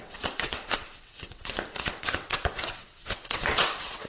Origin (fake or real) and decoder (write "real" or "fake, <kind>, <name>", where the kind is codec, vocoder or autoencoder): fake, vocoder, WaveNeXt